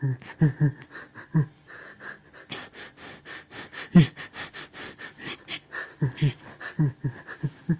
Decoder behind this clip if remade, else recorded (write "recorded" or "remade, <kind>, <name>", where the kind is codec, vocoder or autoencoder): recorded